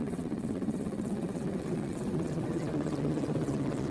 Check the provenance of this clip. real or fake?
fake